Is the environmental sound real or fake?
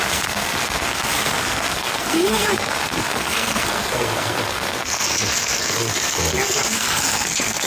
fake